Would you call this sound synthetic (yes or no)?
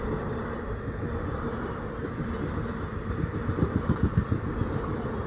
no